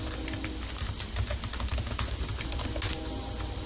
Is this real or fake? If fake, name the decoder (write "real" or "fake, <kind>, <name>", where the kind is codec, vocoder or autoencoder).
real